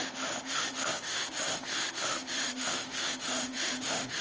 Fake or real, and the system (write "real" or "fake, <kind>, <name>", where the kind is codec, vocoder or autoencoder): fake, autoencoder, DAC-VAE